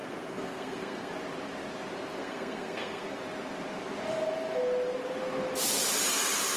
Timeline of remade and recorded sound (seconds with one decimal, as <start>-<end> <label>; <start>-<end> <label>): 0.0-1.1 remade; 1.1-2.2 recorded; 2.2-3.2 remade; 3.2-6.6 recorded